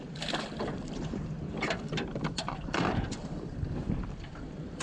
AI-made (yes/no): yes